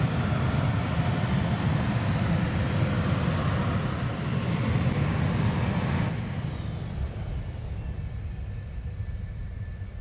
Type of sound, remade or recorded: recorded